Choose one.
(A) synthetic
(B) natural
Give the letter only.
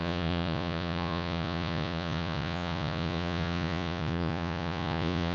A